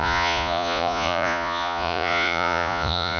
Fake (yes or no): yes